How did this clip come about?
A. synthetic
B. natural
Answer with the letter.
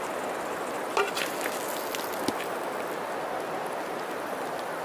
B